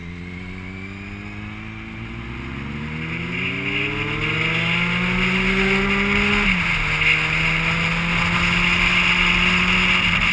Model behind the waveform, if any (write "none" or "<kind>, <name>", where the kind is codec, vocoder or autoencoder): none